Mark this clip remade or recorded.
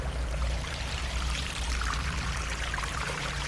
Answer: remade